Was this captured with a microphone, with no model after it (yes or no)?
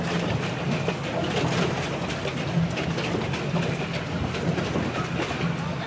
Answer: yes